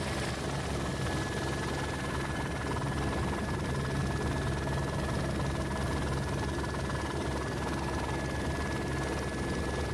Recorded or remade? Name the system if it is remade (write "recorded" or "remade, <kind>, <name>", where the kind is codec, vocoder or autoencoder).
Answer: recorded